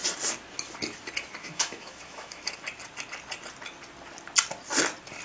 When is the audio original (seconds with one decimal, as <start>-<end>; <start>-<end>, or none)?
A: 0.0-1.4; 2.5-5.2